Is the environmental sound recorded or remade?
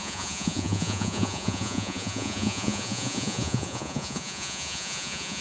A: remade